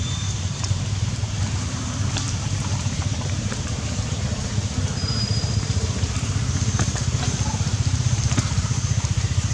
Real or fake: fake